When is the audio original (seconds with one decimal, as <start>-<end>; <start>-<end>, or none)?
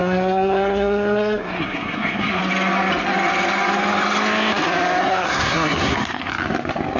2.4-5.0; 6.3-7.0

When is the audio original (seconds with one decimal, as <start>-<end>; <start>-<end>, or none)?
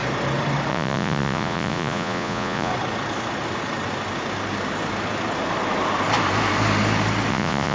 0.0-0.7; 2.7-7.3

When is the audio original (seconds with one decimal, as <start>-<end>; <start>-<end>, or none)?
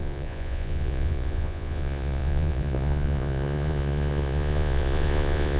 none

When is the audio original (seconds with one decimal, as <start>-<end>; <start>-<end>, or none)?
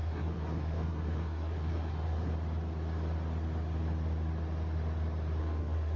2.3-5.4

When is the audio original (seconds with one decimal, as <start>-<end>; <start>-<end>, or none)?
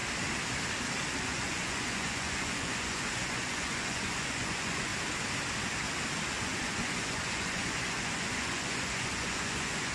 0.0-1.2; 4.9-6.4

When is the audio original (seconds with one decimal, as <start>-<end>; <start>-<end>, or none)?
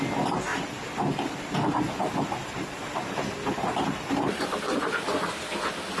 0.0-2.4; 5.5-6.0